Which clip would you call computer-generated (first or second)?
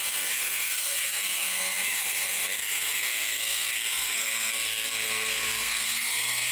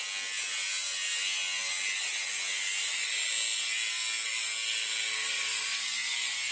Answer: first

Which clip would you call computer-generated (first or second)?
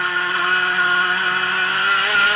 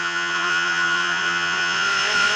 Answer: second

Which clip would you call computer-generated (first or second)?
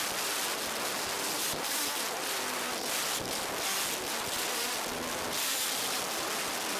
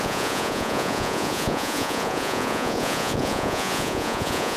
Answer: second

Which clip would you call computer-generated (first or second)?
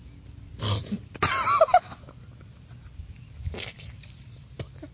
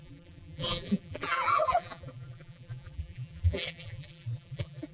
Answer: second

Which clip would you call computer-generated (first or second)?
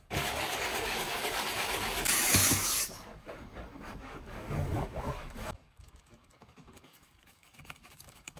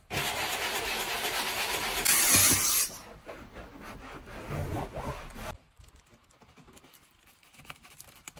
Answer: first